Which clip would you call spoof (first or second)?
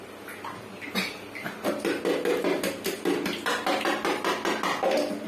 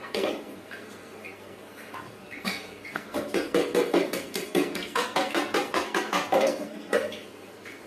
second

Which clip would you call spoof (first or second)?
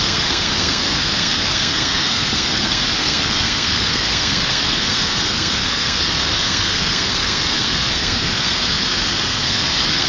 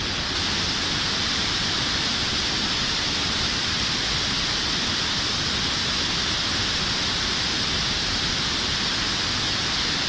first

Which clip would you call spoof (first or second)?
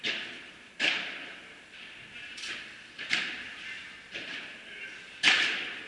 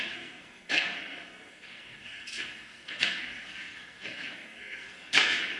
second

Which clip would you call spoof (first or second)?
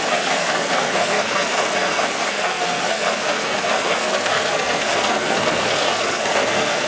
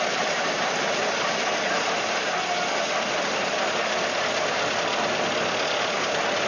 first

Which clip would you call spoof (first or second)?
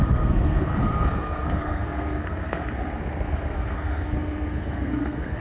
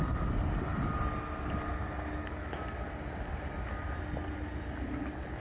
first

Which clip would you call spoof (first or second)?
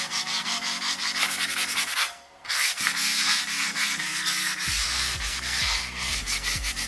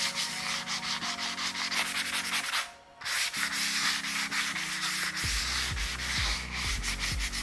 first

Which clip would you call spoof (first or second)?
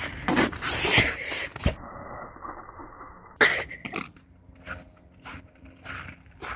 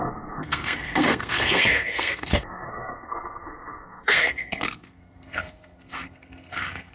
second